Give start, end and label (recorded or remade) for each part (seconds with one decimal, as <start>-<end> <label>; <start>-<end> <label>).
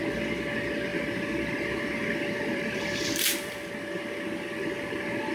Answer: 0.0-0.9 recorded; 0.9-3.7 remade; 3.7-5.3 recorded